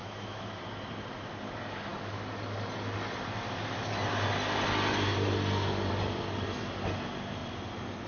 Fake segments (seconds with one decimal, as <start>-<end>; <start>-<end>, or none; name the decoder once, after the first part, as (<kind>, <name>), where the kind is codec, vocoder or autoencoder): 0.0-0.6 (autoencoder, DAC-VAE)